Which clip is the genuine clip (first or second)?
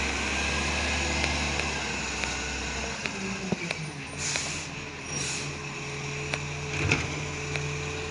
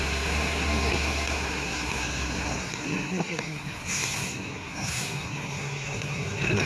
first